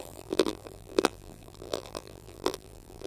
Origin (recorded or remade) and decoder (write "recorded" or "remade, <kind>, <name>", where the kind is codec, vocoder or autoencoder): remade, vocoder, BigVGAN v2